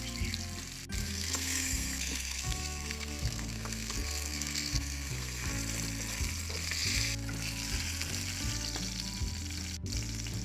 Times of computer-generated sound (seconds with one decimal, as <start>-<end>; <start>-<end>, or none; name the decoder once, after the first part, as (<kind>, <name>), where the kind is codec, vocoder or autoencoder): 1.0-5.5 (codec, SNAC)